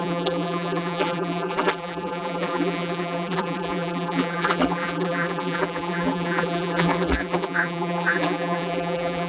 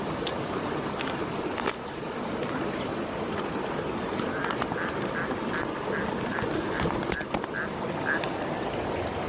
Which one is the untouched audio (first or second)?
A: second